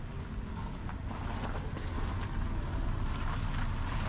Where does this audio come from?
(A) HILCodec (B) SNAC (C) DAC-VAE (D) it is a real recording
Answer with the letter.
D